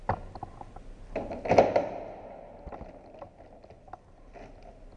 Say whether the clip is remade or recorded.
recorded